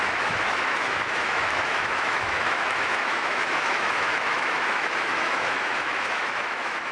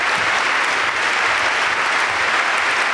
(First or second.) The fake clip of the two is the first